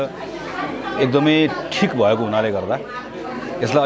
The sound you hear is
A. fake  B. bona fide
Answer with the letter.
B